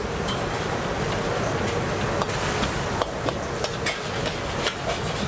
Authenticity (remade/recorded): recorded